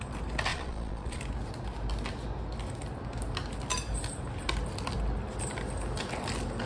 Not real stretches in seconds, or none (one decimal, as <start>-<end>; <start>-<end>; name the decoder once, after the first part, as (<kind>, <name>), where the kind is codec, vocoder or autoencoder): 0.5-1.2 (vocoder, Vocos)

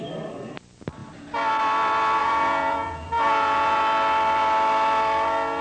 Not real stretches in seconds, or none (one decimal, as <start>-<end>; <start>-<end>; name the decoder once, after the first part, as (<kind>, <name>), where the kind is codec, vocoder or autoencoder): 2.2-3.8 (vocoder, Vocos)

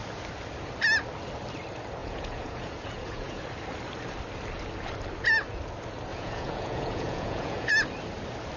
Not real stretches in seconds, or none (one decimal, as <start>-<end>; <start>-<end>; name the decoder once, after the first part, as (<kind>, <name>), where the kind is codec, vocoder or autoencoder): 2.0-3.4 (vocoder, Vocos); 6.1-7.7

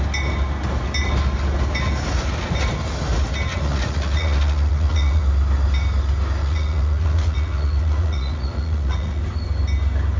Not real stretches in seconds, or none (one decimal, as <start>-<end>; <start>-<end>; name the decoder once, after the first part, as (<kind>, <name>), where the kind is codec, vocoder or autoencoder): 3.5-5.2 (vocoder, Vocos); 6.4-9.2

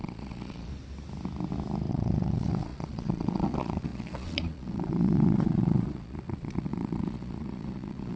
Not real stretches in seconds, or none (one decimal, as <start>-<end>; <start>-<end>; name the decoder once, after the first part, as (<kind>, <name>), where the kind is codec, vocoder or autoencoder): 0.0-0.7 (vocoder, Vocos); 1.9-8.2

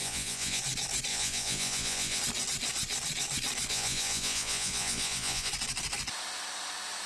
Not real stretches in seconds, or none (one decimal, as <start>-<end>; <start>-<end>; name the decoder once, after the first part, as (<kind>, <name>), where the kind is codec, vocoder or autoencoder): 0.0-0.6 (vocoder, Vocos); 1.1-2.2; 3.7-5.5

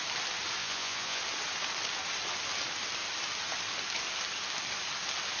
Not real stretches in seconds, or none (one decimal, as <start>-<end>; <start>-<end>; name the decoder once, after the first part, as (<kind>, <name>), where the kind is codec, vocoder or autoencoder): 0.6-1.2 (vocoder, Vocos)